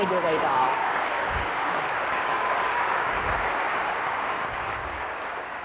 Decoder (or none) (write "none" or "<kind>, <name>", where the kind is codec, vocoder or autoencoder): codec, DAC